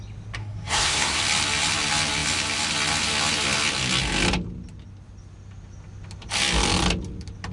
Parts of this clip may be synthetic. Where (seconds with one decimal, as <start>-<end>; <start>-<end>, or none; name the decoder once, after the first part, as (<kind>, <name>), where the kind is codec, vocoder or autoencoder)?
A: 0.4-1.2 (codec, SNAC)